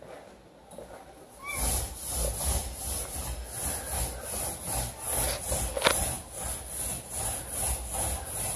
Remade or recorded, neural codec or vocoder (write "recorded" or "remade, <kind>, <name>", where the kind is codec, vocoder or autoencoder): recorded